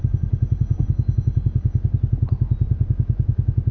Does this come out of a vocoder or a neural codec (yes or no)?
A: no